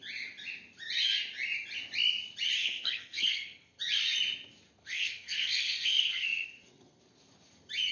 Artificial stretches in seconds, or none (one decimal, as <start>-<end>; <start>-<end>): 2.6-3.8; 4.8-7.0